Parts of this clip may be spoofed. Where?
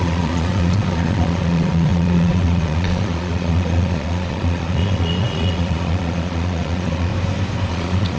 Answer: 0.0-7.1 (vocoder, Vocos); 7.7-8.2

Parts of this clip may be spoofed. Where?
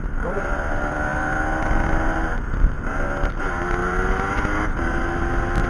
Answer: none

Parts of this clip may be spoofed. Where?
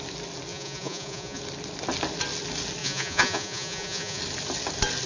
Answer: 0.5-1.4 (vocoder, Vocos); 2.8-4.2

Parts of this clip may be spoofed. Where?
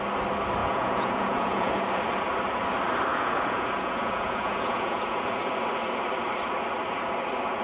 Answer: 0.6-1.7 (vocoder, Vocos); 3.1-5.5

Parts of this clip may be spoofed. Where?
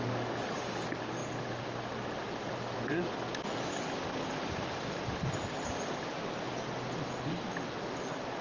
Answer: none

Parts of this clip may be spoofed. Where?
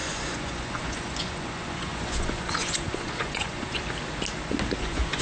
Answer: 0.0-3.8 (vocoder, Vocos); 4.8-5.2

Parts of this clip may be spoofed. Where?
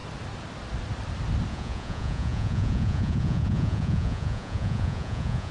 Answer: 1.5-5.5 (vocoder, Vocos)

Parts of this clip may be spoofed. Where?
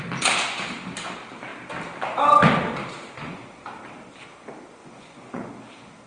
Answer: 3.2-3.7 (vocoder, Vocos); 4.8-5.5